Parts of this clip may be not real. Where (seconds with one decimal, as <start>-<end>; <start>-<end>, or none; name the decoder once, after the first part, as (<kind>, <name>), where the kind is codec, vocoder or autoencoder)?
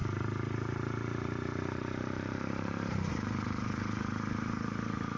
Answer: 0.0-5.2 (vocoder, BigVGAN v2)